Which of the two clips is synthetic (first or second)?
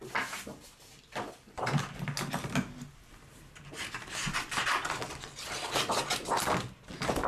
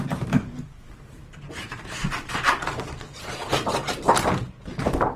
second